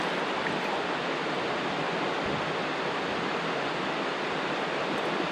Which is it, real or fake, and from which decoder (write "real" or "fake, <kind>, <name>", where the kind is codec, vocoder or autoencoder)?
real